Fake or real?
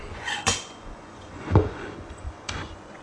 fake